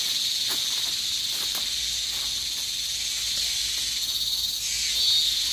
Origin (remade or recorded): recorded